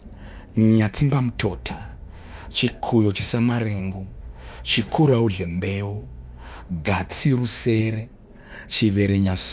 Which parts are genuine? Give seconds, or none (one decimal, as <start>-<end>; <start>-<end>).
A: 0.0-0.8; 7.8-8.7

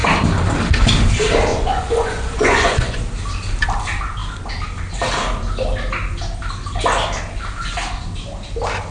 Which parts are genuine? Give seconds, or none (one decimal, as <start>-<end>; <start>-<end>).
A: 0.0-1.5; 3.0-8.9

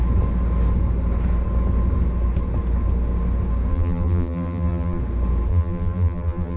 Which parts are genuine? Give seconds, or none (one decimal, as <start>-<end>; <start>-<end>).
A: 0.0-3.7; 5.0-5.5

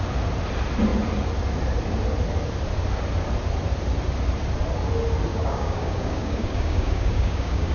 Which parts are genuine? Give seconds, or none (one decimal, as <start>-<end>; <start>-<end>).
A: 0.0-5.3

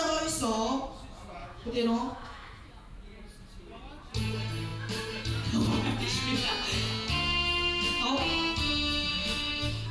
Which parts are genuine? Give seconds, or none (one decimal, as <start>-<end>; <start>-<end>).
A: 0.0-1.4; 2.7-9.1